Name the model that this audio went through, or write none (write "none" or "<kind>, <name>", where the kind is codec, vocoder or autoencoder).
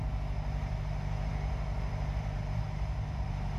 none